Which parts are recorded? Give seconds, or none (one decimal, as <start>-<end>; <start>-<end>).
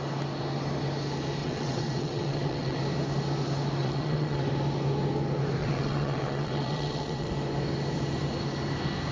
0.0-1.4; 2.8-3.8; 4.5-5.6; 7.3-9.1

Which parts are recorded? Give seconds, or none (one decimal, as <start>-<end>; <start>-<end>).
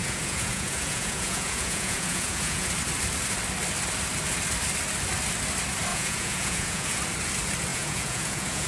2.7-5.9; 7.0-7.7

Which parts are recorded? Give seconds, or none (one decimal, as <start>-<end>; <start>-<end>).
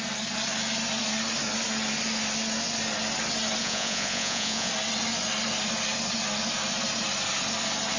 0.0-3.6; 4.7-8.0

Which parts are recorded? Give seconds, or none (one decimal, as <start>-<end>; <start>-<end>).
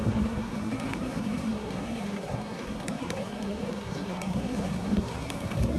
none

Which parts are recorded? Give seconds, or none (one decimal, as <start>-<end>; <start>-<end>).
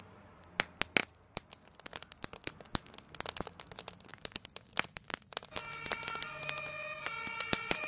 0.0-1.0; 2.5-4.1; 5.1-7.9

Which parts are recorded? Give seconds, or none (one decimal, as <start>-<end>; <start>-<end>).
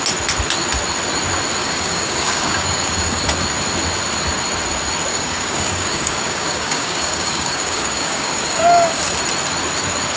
0.0-1.6; 3.2-5.1; 9.0-10.2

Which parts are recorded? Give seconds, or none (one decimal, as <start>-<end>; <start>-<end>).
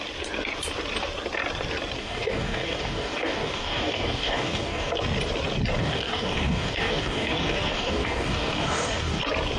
0.0-2.0; 4.9-5.8; 9.2-9.6